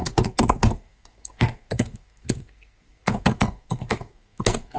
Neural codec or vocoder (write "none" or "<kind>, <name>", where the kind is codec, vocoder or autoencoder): codec, SNAC